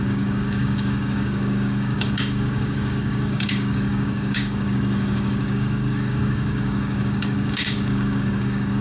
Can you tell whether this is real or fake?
fake